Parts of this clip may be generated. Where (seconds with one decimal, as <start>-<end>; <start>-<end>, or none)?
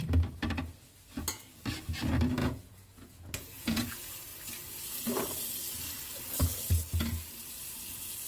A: 2.4-3.9